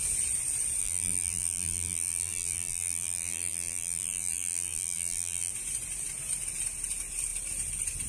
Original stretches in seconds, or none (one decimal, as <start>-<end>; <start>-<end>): 0.0-0.8; 5.5-8.1